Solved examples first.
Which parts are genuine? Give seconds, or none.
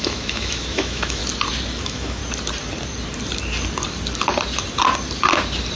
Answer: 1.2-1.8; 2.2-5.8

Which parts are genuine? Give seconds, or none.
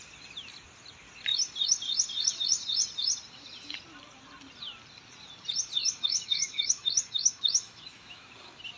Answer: 0.0-5.8; 8.3-8.8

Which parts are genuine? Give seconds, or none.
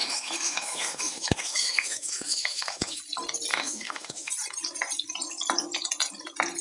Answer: 3.0-3.5; 4.3-6.6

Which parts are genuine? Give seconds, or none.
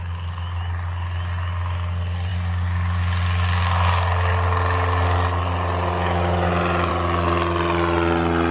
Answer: 0.0-8.5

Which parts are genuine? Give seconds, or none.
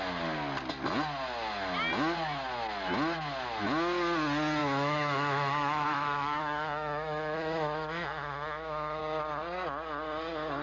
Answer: 0.0-4.6; 9.0-10.6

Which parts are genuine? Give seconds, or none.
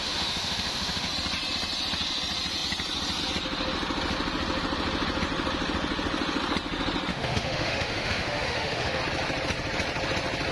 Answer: 1.1-7.1; 9.0-10.5